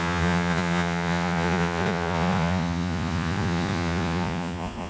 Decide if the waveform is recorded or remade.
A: remade